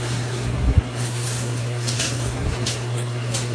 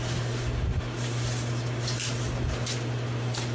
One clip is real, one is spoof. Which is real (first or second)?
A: second